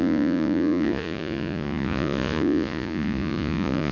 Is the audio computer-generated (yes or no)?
yes